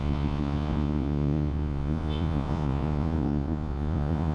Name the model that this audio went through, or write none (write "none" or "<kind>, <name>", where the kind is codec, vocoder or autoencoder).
vocoder, Vocos